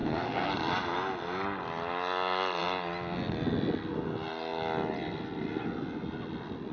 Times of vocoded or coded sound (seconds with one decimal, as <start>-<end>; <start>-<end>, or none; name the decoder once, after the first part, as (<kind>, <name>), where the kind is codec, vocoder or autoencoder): 0.0-0.5 (codec, SNAC)